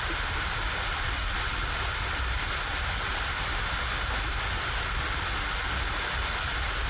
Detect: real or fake real